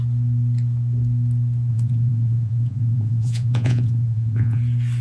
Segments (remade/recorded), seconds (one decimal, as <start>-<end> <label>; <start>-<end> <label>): 0.0-1.7 recorded; 1.7-4.6 remade; 4.6-5.0 recorded